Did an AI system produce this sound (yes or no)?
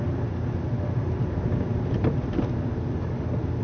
no